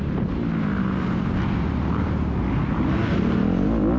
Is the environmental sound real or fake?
real